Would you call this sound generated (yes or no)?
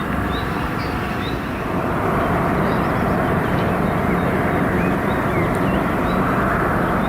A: yes